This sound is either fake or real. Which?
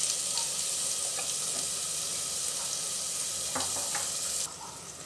real